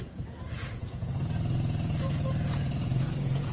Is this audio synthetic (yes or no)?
yes